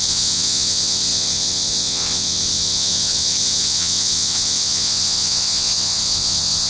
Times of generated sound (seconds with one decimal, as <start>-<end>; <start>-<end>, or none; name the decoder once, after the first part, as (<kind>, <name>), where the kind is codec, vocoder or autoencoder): 0.0-6.7 (vocoder, WaveNeXt)